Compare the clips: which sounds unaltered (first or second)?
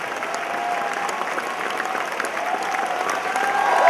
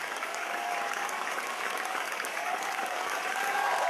first